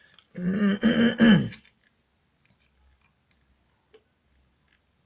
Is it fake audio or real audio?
real